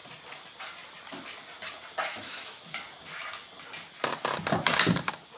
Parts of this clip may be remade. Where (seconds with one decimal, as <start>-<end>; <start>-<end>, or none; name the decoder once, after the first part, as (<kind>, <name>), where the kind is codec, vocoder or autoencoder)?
2.1-2.8 (autoencoder, DAC-VAE)